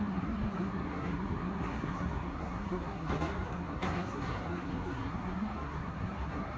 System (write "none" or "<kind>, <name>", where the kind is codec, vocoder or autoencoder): codec, SNAC